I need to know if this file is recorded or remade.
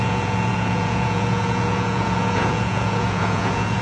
remade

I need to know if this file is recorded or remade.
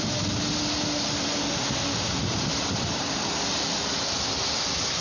recorded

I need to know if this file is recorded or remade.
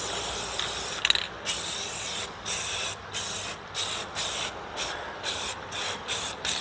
recorded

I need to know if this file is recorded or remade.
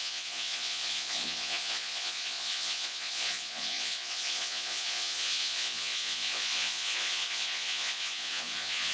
remade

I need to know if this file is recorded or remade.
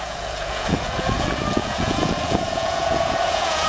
remade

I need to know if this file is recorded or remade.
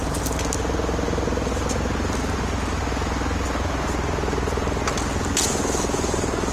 recorded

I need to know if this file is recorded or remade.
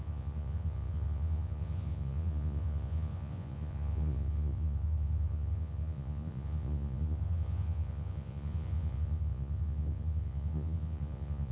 remade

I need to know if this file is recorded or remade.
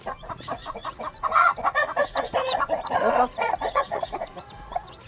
remade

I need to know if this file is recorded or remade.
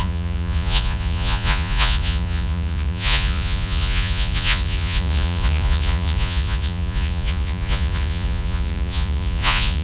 remade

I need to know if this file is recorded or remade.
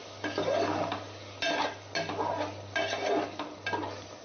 recorded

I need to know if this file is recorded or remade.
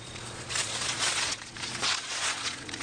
remade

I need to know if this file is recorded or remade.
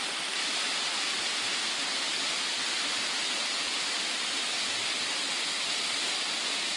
recorded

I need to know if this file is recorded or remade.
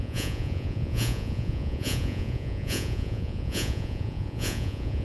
remade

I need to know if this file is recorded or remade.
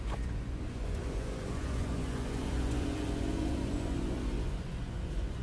remade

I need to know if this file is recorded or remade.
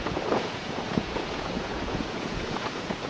remade